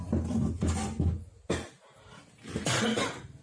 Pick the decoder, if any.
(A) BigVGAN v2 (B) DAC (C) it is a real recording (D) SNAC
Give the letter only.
C